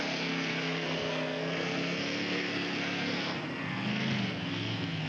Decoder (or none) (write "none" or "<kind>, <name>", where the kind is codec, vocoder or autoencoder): codec, SNAC